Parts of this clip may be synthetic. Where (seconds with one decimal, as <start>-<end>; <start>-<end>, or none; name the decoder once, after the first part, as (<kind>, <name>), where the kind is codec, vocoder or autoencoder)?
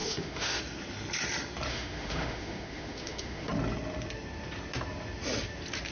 0.0-0.6 (autoencoder, DAC-VAE); 1.7-3.5